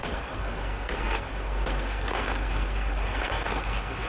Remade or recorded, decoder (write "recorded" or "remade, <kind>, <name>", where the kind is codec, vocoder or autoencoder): remade, codec, SNAC